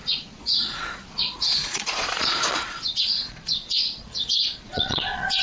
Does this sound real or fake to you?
fake